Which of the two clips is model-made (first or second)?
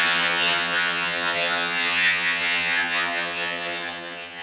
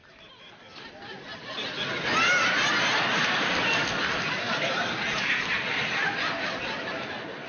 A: first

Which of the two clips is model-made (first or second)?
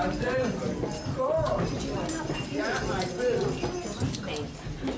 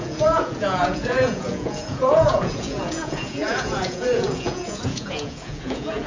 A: second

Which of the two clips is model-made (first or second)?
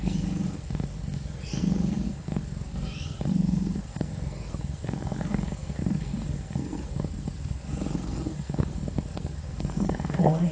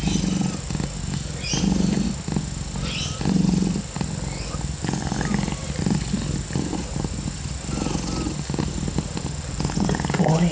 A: first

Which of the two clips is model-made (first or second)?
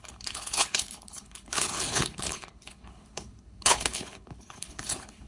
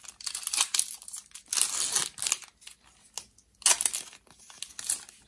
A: first